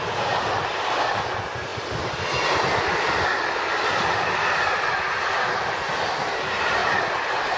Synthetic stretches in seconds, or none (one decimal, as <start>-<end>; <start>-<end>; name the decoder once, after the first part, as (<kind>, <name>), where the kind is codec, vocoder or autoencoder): none